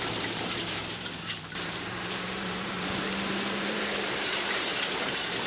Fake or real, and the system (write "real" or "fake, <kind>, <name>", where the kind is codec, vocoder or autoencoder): fake, vocoder, BigVGAN v2